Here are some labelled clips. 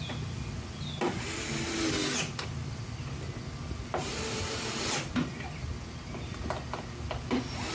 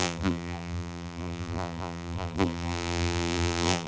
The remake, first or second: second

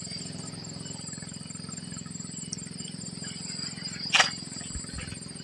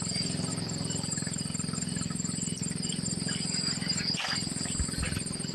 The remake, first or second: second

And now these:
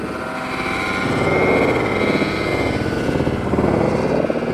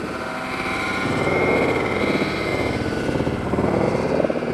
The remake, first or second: second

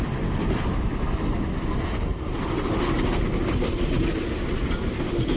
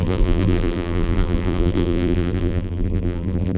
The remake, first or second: second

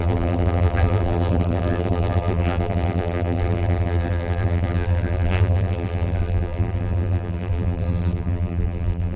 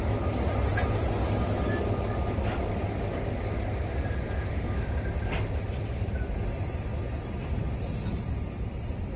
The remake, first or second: first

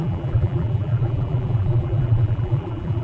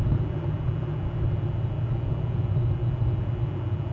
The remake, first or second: first